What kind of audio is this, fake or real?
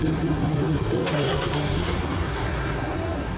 fake